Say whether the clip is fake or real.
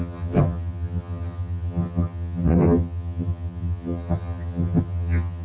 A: fake